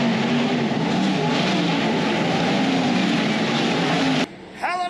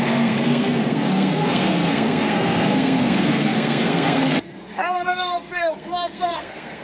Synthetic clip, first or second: second